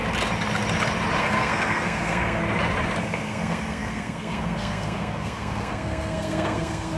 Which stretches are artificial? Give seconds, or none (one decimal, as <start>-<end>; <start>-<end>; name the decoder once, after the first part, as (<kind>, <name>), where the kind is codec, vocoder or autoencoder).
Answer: 1.2-2.4 (codec, SNAC); 3.0-7.0